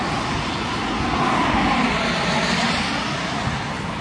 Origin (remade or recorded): recorded